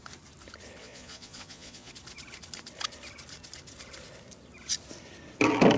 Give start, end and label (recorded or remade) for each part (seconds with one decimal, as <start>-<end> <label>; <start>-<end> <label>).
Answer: 0.0-0.8 recorded; 0.8-1.9 remade; 1.9-5.8 recorded

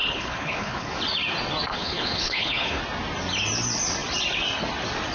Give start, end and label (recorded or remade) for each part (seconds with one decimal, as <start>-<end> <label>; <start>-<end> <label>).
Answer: 0.0-0.9 remade; 0.9-1.7 recorded; 1.7-2.8 remade; 2.8-5.1 recorded

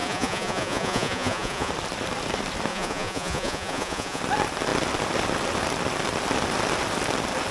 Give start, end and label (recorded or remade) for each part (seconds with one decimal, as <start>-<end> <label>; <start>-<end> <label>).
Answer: 0.0-1.7 remade; 1.7-2.7 recorded; 2.7-4.2 remade; 4.2-7.5 recorded

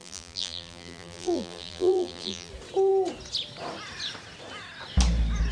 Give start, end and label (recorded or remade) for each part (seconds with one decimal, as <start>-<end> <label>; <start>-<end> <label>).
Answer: 0.0-2.5 remade; 2.5-5.5 recorded

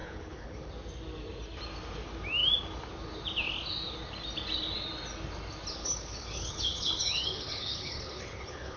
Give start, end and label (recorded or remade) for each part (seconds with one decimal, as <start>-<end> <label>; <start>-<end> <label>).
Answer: 0.0-0.7 remade; 0.7-5.8 recorded; 5.8-8.8 remade

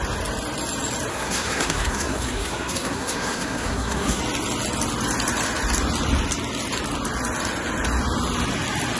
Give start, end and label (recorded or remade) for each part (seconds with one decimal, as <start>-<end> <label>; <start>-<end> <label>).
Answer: 0.0-1.1 recorded; 1.1-4.2 remade; 4.2-9.0 recorded